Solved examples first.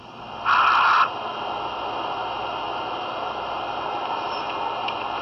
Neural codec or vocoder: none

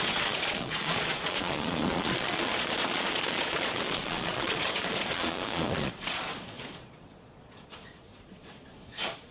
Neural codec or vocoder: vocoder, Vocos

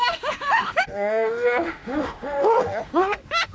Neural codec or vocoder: autoencoder, DAC-VAE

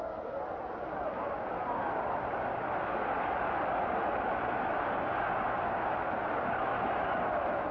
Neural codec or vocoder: none